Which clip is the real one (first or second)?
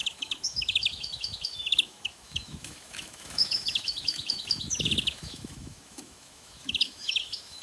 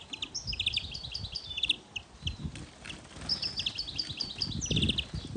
second